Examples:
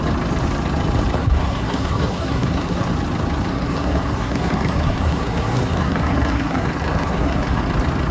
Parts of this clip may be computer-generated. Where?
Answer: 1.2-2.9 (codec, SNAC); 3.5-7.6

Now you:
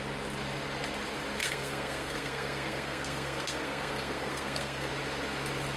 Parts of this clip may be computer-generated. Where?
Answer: 1.4-4.9 (codec, SNAC)

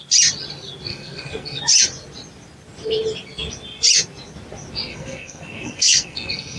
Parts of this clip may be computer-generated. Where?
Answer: 0.9-1.6 (codec, SNAC); 4.9-6.6